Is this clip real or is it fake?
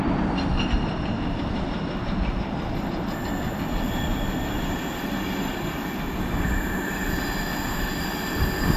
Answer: real